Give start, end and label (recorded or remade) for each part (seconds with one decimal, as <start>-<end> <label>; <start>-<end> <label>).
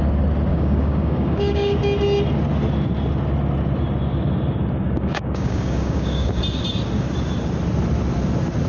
0.0-0.5 recorded; 0.5-1.8 remade; 1.8-4.8 recorded; 4.8-6.4 remade; 6.4-8.7 recorded